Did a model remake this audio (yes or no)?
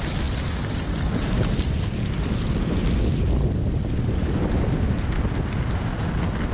yes